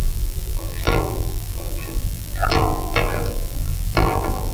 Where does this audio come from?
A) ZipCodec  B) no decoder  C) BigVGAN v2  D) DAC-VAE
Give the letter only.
C